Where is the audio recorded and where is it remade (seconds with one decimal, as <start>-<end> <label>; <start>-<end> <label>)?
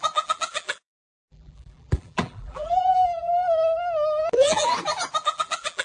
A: 0.0-3.4 remade; 3.4-4.2 recorded; 4.2-4.7 remade; 4.7-5.2 recorded; 5.2-5.8 remade